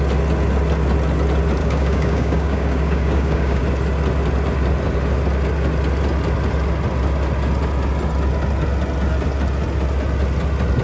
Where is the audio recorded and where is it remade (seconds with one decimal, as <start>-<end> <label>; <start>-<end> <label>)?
0.0-1.6 recorded; 1.6-3.6 remade; 3.6-10.8 recorded